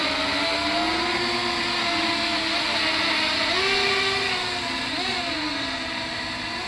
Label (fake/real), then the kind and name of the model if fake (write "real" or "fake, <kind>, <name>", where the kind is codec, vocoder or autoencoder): real